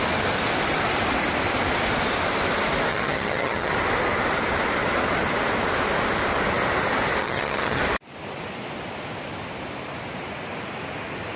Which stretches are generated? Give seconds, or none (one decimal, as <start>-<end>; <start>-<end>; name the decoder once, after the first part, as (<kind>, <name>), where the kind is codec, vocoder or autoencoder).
2.9-3.7 (vocoder, HiFi-GAN); 7.2-7.8

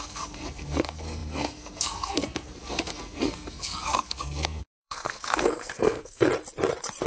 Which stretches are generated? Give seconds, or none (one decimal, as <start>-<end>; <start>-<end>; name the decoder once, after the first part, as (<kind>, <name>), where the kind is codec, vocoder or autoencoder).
0.0-6.3 (codec, SNAC)

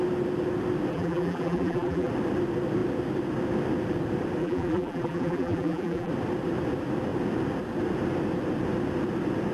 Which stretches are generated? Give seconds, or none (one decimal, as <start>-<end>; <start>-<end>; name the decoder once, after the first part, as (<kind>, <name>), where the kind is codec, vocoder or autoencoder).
0.9-2.1 (vocoder, BigVGAN v2); 4.4-6.1

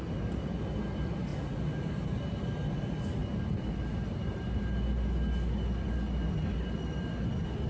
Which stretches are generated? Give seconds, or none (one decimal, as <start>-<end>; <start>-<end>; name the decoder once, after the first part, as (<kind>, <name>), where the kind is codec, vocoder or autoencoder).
1.3-1.8 (vocoder, BigVGAN v2); 3.2-4.6